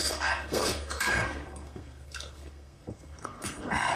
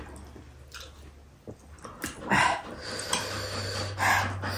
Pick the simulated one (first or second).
first